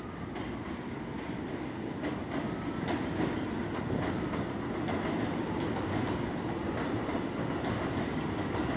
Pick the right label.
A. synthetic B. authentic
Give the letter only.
B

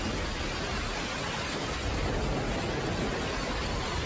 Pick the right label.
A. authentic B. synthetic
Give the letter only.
A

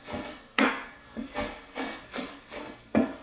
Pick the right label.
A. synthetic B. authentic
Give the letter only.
A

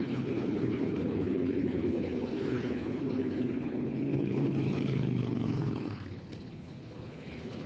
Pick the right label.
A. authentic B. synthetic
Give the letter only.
B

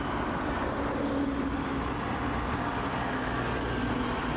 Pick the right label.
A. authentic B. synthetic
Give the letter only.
A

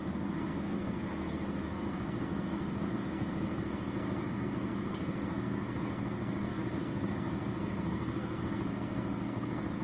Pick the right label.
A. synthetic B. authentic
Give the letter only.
A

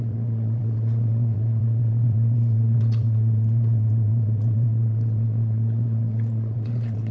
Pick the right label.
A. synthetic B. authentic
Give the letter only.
A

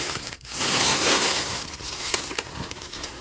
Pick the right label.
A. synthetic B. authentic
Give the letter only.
A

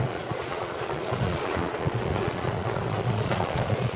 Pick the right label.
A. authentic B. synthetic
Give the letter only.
B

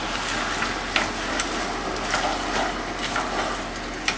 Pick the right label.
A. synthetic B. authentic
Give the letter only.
B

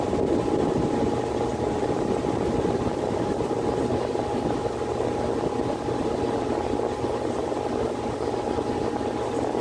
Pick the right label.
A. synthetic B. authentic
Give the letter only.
B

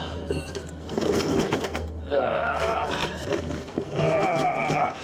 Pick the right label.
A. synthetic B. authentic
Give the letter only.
A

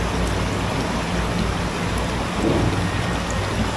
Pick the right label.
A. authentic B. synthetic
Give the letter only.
A